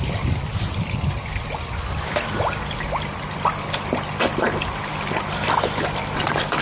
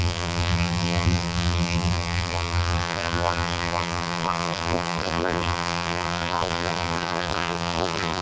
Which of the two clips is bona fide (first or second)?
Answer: first